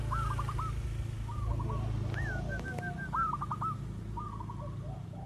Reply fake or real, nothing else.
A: real